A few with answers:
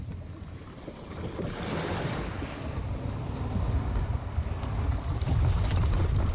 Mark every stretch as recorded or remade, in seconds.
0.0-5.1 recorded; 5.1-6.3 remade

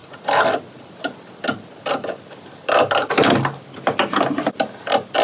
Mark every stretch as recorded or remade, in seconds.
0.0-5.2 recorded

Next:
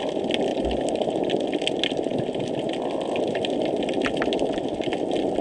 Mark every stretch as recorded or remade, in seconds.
0.0-5.4 recorded